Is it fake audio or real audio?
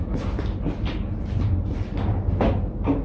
real